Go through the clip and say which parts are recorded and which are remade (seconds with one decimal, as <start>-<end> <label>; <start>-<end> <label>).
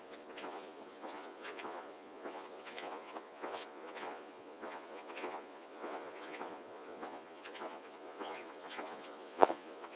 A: 0.0-10.0 remade